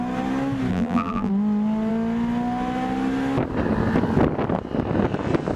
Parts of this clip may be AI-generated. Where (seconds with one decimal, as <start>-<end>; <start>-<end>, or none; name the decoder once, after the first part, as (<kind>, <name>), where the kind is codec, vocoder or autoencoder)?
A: 0.7-1.3 (vocoder, BigVGAN v2)